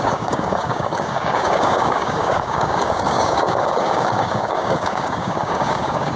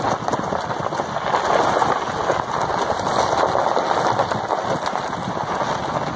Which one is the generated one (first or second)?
first